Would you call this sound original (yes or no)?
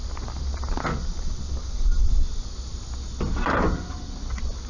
yes